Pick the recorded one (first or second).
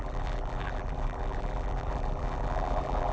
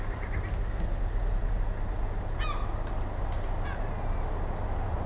second